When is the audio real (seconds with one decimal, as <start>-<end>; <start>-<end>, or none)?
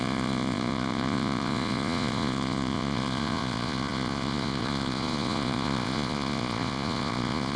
none